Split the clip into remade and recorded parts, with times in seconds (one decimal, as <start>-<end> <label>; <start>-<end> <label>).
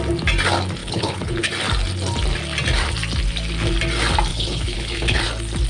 0.0-0.8 recorded; 0.8-1.5 remade; 1.5-4.3 recorded; 4.3-5.2 remade; 5.2-5.7 recorded